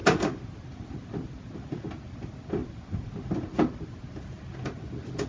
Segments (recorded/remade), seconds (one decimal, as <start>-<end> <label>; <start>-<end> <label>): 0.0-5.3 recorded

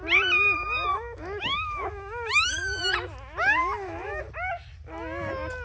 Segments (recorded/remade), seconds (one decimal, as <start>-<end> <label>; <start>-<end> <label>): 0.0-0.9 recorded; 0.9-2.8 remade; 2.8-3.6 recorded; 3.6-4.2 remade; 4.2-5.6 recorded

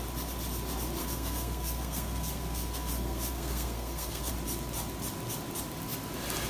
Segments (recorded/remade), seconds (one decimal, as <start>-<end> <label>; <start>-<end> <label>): 0.0-1.0 recorded; 1.0-4.3 remade; 4.3-6.5 recorded

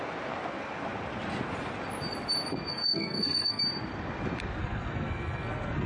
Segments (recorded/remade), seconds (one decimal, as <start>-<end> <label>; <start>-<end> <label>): 0.0-2.7 recorded; 2.7-3.6 remade; 3.6-4.6 recorded; 4.6-5.9 remade

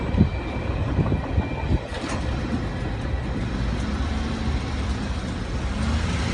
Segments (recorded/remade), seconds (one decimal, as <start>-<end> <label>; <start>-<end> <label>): 0.0-6.3 recorded

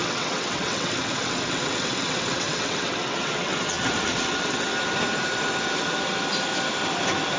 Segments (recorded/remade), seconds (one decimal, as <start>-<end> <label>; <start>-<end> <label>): 0.0-4.7 remade; 4.7-7.4 recorded

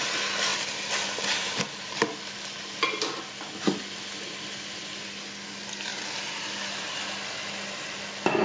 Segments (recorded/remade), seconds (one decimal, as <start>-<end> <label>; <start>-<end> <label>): 0.0-8.4 recorded

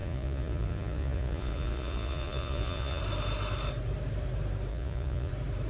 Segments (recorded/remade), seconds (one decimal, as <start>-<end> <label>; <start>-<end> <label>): 0.0-3.0 remade; 3.0-4.7 recorded; 4.7-5.3 remade; 5.3-5.7 recorded